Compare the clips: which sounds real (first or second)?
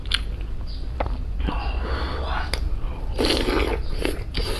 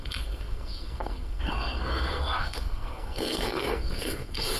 first